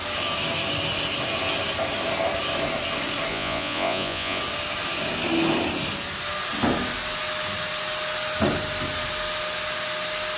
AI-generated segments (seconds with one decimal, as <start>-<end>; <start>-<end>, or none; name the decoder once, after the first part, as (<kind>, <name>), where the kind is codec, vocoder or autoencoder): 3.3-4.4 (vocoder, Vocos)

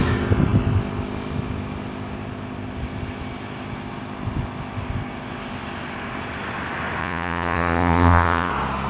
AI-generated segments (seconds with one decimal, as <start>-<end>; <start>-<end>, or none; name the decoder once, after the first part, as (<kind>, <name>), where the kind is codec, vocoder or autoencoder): 7.0-8.5 (vocoder, Vocos)

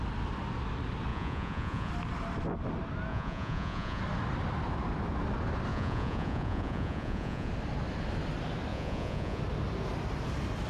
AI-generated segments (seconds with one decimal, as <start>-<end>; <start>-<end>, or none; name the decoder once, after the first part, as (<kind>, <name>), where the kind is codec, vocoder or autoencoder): 1.1-1.9 (vocoder, Vocos); 3.1-4.0; 5.7-7.5; 8.7-9.4